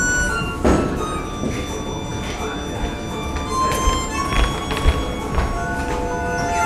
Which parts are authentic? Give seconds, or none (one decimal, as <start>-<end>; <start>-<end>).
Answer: 0.0-6.7